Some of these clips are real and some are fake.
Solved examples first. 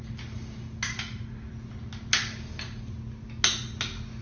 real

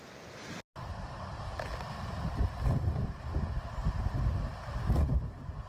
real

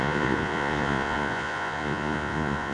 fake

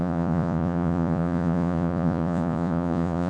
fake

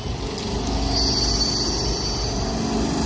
real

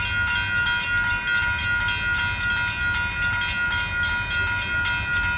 real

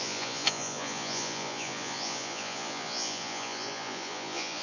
fake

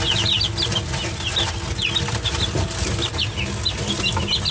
real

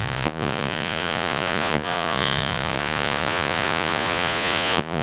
fake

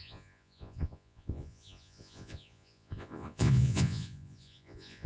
fake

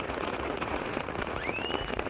fake